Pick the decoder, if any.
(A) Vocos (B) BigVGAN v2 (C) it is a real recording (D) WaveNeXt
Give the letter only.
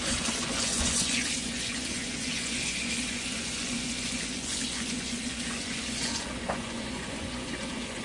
A